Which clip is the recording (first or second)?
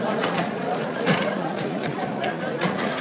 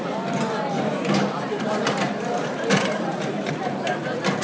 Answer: second